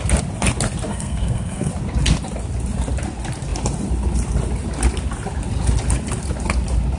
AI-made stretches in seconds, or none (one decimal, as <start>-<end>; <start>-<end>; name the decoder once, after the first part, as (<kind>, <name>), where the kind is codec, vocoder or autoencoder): 0.9-1.7 (codec, SNAC)

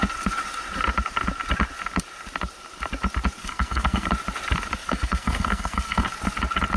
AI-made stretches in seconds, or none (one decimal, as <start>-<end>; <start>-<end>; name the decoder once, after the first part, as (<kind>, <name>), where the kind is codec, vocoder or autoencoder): 3.4-4.1 (codec, SNAC); 4.8-6.1

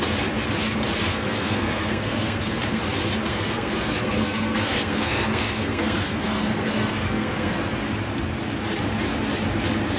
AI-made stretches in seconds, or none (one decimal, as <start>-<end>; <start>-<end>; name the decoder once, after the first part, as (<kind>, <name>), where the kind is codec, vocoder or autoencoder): 1.1-2.8 (codec, SNAC); 3.3-7.6

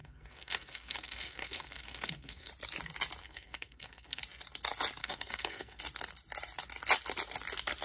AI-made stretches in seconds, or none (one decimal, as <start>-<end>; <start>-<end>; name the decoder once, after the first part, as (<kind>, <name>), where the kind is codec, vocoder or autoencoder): 0.0-2.5 (codec, SNAC); 3.2-4.2; 5.0-5.8

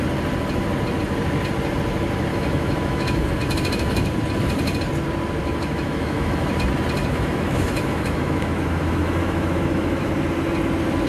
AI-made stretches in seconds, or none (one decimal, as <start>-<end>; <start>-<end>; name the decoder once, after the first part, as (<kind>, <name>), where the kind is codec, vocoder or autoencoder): 2.3-4.1 (autoencoder, DAC-VAE); 5.4-6.5; 7.0-10.1

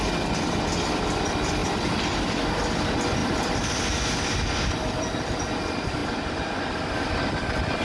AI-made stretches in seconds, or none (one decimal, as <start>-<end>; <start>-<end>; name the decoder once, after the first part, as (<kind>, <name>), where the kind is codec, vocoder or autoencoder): 3.2-3.8 (vocoder, BigVGAN v2); 6.0-6.6

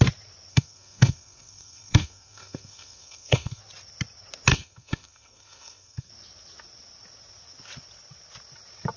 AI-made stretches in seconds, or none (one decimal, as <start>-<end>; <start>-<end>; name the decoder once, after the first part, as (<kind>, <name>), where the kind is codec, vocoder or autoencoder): 0.5-3.6 (codec, SNAC); 4.5-6.1

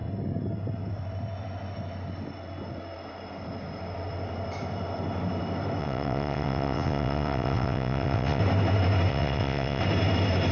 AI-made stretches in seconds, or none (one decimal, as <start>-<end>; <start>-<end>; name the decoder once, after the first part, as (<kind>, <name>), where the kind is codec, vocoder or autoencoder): 5.8-8.4 (vocoder, WaveNeXt); 9.1-9.8